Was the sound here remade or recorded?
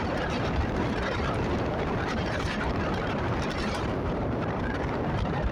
remade